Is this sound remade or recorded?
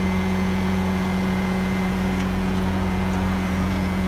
remade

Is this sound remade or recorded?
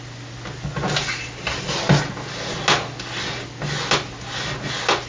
recorded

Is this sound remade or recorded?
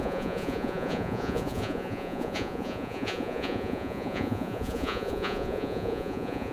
remade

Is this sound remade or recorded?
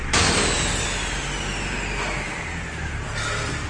recorded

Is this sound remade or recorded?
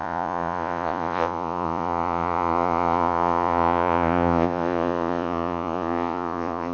remade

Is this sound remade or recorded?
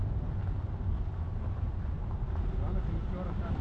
recorded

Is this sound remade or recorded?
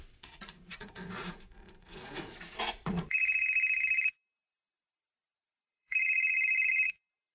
remade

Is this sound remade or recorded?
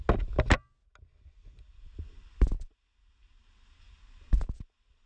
recorded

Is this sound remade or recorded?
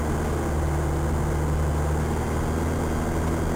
recorded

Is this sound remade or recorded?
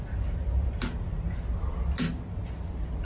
recorded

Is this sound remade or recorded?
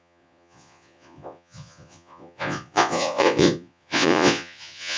remade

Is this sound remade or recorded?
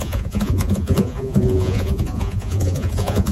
remade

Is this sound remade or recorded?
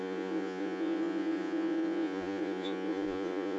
remade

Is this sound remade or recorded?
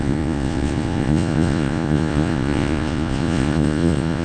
remade